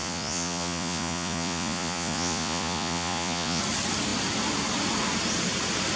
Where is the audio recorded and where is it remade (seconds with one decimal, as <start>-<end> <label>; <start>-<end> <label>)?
0.0-3.6 remade; 3.6-6.0 recorded